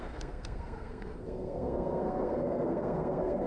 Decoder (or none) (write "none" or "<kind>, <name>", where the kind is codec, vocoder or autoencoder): codec, SNAC